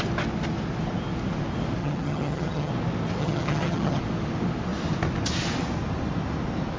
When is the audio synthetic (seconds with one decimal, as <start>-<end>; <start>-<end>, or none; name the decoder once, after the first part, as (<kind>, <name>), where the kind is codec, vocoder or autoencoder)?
1.8-2.7 (vocoder, HiFi-GAN); 3.2-4.0